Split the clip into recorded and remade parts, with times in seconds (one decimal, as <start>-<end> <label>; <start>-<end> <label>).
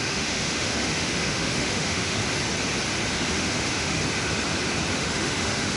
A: 0.0-2.2 remade; 2.2-3.1 recorded; 3.1-4.0 remade; 4.0-4.9 recorded; 4.9-5.8 remade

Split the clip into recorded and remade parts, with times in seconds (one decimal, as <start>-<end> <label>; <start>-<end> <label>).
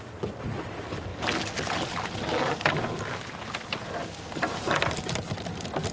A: 0.0-5.9 recorded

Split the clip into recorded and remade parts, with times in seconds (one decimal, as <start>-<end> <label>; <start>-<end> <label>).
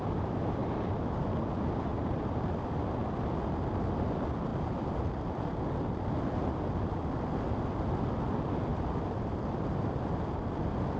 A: 0.0-0.6 recorded; 0.6-1.4 remade; 1.4-1.9 recorded; 1.9-2.8 remade; 2.8-4.5 recorded; 4.5-6.1 remade; 6.1-8.7 recorded; 8.7-10.6 remade; 10.6-11.0 recorded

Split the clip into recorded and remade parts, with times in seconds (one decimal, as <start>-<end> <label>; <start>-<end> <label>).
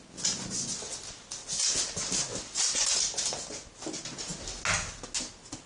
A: 0.0-5.7 recorded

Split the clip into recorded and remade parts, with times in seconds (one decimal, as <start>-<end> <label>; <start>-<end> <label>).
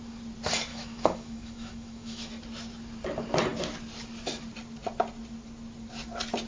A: 0.0-0.7 recorded; 0.7-2.3 remade; 2.3-6.5 recorded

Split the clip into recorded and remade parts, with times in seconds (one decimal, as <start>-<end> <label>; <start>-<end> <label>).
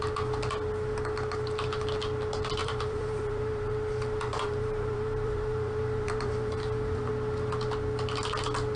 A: 0.0-2.6 recorded; 2.6-3.7 remade; 3.7-4.3 recorded; 4.3-7.1 remade; 7.1-8.8 recorded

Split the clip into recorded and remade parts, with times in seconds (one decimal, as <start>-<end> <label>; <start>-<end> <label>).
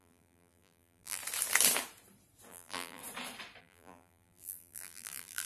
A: 0.0-1.2 remade; 1.2-2.5 recorded; 2.5-3.0 remade; 3.0-3.6 recorded; 3.6-5.5 remade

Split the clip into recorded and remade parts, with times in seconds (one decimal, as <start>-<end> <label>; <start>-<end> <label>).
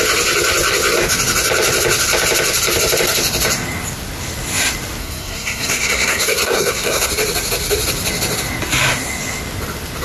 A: 0.0-5.0 recorded; 5.0-7.1 remade; 7.1-10.0 recorded